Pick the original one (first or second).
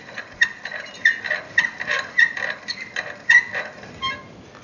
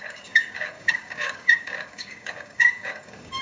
first